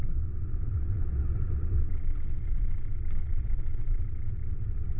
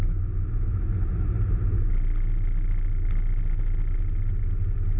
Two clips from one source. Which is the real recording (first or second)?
second